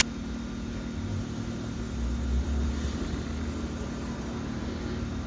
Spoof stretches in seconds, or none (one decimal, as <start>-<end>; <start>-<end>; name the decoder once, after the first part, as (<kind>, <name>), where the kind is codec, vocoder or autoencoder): 1.1-4.3 (vocoder, BigVGAN v2)